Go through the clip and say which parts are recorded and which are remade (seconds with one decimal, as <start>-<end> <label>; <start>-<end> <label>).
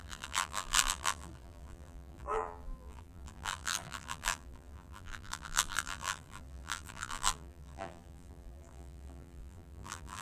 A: 0.0-10.2 remade